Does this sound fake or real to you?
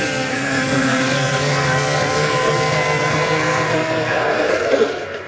fake